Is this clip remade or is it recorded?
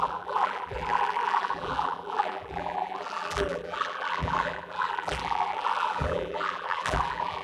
remade